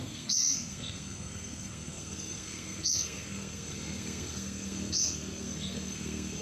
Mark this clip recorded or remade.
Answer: remade